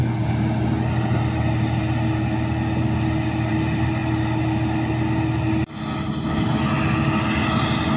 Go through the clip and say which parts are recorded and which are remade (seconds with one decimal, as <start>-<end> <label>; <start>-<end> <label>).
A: 0.0-8.0 recorded